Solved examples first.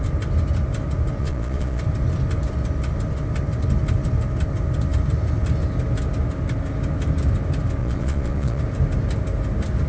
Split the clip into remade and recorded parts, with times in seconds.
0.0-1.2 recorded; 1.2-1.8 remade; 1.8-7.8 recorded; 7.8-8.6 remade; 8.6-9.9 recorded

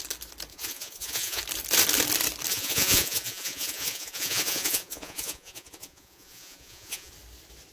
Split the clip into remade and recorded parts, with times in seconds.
0.0-0.5 recorded; 0.5-1.4 remade; 1.4-2.5 recorded; 2.5-7.1 remade; 7.1-7.7 recorded

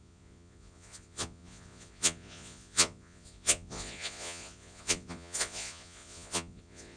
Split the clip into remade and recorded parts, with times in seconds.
0.0-7.0 remade

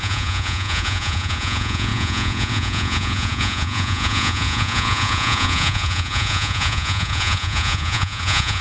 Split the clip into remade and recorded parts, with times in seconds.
0.0-8.6 remade